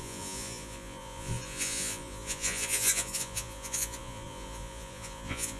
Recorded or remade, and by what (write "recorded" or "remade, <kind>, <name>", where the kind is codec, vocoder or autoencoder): remade, vocoder, Vocos